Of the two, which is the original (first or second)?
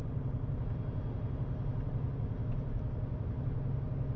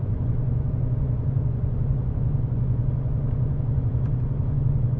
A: first